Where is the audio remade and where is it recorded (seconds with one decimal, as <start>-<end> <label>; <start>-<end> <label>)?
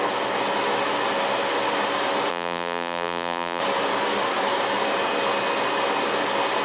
0.0-2.3 recorded; 2.3-3.6 remade; 3.6-6.6 recorded